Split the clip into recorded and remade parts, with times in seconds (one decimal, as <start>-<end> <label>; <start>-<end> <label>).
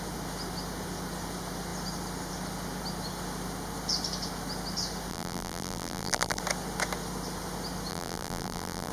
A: 0.0-5.1 recorded; 5.1-6.4 remade; 6.4-7.9 recorded; 7.9-8.9 remade